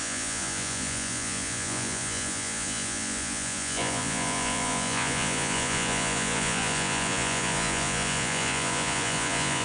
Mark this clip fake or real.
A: fake